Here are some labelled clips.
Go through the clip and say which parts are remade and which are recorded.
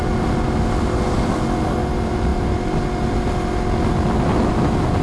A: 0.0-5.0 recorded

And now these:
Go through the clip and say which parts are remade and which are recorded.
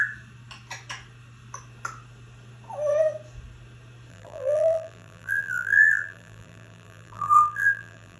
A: 0.0-4.1 recorded; 4.1-8.2 remade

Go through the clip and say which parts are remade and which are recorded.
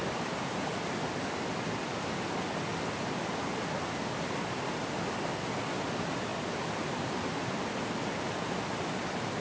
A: 0.0-0.7 remade; 0.7-9.4 recorded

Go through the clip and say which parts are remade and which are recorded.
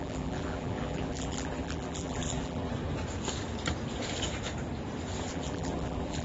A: 0.0-2.7 remade; 2.7-5.3 recorded; 5.3-6.2 remade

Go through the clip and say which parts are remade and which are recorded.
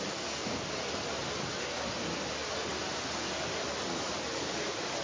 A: 0.0-0.4 recorded; 0.4-1.1 remade; 1.1-5.0 recorded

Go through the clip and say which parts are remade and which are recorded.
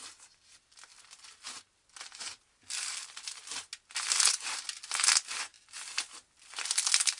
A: 0.0-2.9 recorded; 2.9-3.7 remade; 3.7-5.5 recorded; 5.5-6.6 remade; 6.6-7.2 recorded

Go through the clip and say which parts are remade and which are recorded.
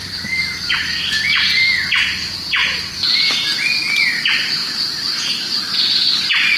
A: 0.0-6.6 recorded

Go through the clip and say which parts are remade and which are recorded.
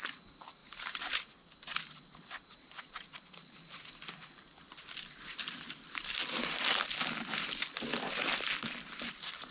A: 0.0-0.6 recorded; 0.6-1.3 remade; 1.3-9.5 recorded